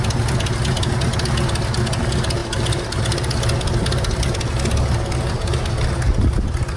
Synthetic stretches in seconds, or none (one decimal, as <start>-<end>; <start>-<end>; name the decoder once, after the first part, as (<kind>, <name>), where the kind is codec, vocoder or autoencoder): none